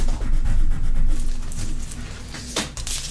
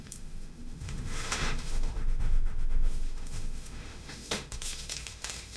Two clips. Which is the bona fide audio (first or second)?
first